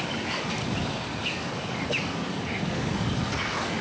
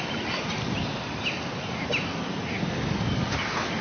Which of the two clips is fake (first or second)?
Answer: first